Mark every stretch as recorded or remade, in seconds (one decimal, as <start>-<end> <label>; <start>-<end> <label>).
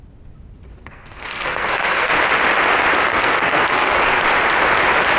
0.0-0.8 recorded; 0.8-2.1 remade; 2.1-3.1 recorded; 3.1-4.1 remade; 4.1-5.2 recorded